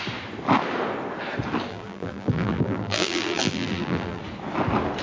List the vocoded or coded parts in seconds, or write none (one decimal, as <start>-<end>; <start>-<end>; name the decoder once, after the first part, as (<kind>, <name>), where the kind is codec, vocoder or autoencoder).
1.7-4.2 (vocoder, BigVGAN v2)